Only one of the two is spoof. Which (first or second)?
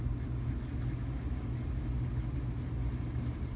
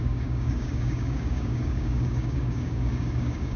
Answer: second